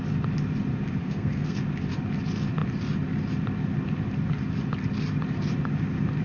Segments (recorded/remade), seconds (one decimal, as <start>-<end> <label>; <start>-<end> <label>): 0.0-1.0 recorded; 1.0-1.6 remade; 1.6-6.2 recorded